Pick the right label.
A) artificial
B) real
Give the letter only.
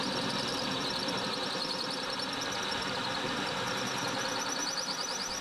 A